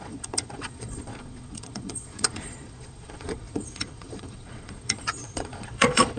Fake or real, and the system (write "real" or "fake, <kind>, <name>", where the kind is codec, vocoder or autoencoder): fake, vocoder, Vocos